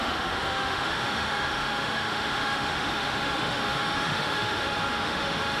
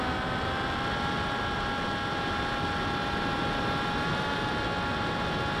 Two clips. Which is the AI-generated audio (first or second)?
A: first